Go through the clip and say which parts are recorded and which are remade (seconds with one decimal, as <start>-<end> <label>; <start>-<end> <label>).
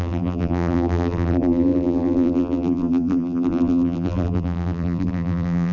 0.0-5.7 remade